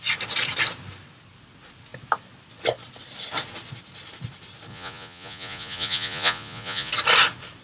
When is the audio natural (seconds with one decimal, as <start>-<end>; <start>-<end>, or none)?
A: 0.0-4.7; 6.9-7.6